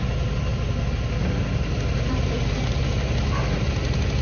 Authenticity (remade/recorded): recorded